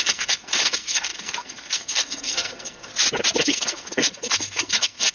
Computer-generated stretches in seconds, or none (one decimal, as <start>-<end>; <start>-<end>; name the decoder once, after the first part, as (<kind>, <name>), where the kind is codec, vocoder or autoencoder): 0.0-2.9 (codec, SNAC); 3.4-5.1